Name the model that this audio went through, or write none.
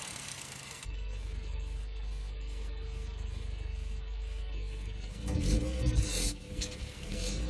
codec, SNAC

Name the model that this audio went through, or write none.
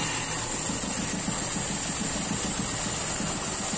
none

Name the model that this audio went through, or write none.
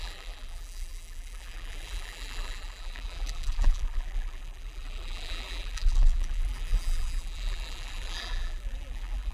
vocoder, BigVGAN v2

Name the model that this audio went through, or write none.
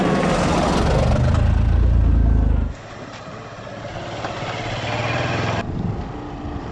none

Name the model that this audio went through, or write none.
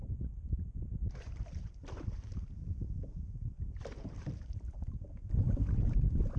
vocoder, BigVGAN v2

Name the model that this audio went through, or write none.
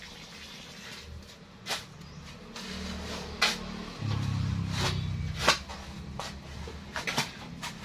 none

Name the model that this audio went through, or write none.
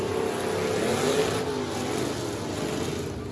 none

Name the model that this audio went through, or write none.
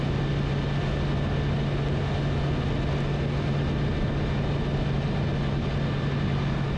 none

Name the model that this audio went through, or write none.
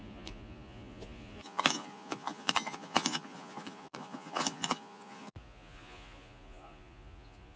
vocoder, Vocos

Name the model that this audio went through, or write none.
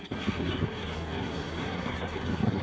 codec, SNAC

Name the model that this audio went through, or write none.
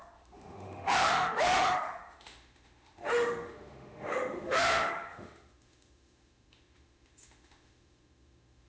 autoencoder, DAC-VAE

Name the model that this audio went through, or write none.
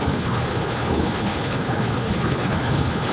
codec, HILCodec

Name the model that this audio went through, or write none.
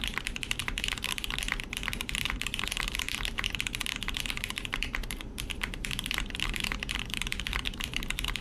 vocoder, BigVGAN v2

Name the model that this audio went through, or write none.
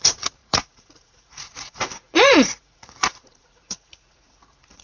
vocoder, Vocos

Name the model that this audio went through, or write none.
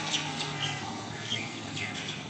codec, SNAC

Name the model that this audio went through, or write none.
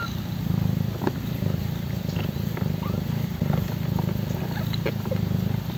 none